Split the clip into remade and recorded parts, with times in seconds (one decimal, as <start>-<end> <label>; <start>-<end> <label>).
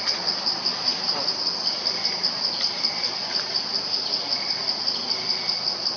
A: 0.0-6.0 recorded